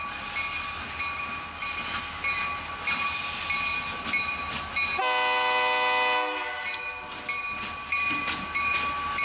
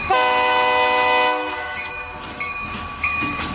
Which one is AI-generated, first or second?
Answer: second